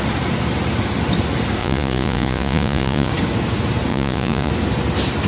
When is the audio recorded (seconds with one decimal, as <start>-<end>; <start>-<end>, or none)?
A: 0.0-1.6; 3.1-3.9; 4.5-5.3